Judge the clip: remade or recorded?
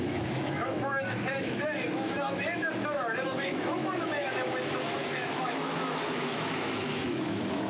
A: remade